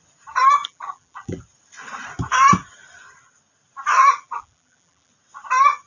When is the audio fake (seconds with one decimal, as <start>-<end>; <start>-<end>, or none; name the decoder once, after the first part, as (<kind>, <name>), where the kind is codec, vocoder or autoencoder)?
0.6-1.4 (vocoder, BigVGAN v2); 4.0-5.1